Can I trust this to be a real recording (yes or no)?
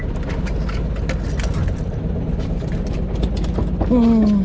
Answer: yes